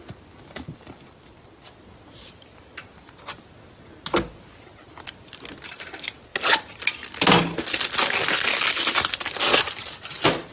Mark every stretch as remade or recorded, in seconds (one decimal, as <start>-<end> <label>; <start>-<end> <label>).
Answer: 0.0-10.5 recorded